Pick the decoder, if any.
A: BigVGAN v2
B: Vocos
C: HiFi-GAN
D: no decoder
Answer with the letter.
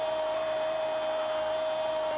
D